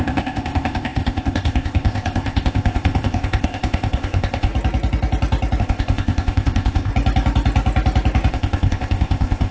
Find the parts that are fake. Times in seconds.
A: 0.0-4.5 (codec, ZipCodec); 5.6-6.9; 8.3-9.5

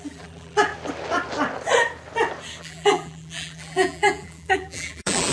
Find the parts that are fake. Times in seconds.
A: 0.0-0.7 (vocoder, BigVGAN v2); 2.6-5.3